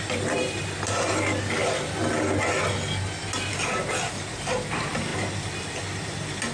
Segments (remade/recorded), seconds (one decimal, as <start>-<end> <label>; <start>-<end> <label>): 0.0-6.5 recorded